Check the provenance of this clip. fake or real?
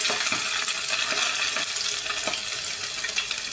real